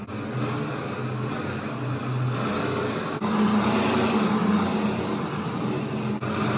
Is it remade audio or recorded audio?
recorded